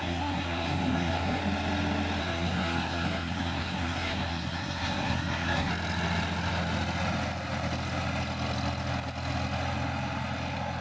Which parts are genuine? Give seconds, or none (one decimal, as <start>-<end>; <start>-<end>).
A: 1.4-2.2; 5.7-10.8